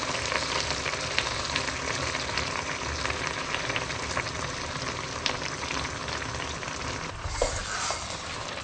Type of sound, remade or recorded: recorded